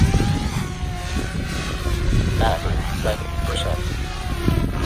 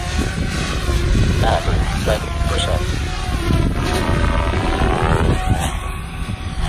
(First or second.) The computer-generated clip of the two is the second